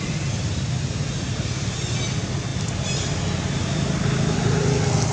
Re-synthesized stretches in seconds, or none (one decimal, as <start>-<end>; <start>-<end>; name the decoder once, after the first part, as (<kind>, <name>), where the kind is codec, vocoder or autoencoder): none